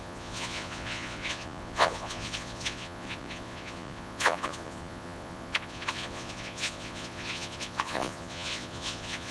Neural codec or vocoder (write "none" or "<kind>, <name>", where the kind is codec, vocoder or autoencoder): vocoder, Vocos